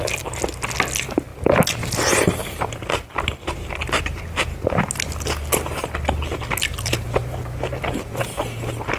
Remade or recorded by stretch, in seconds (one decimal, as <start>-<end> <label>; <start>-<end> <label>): 0.0-9.0 recorded